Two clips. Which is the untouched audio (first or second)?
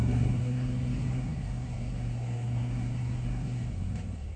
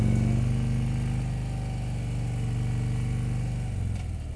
second